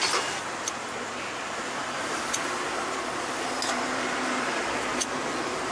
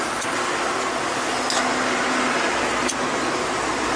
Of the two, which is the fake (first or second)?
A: first